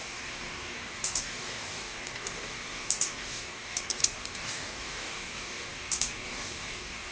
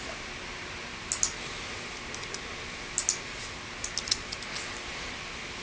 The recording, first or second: second